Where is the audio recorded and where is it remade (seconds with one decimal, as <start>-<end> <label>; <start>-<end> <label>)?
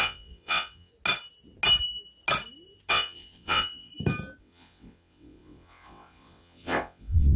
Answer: 0.0-0.9 remade; 0.9-2.9 recorded; 2.9-3.9 remade; 3.9-4.4 recorded; 4.4-7.4 remade